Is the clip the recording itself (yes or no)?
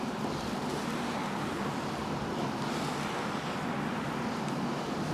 yes